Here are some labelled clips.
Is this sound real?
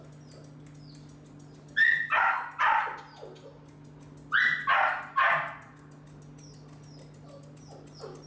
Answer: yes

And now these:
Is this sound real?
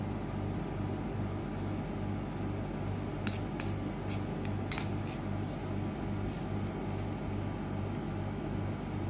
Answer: yes